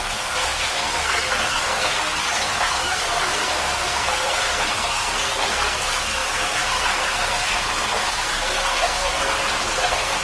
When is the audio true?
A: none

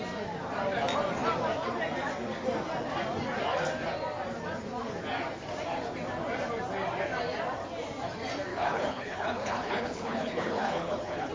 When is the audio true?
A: 0.0-8.5

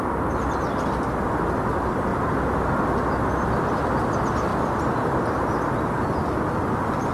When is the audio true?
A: 0.0-7.1